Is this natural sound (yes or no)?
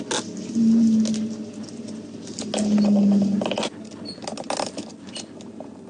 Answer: yes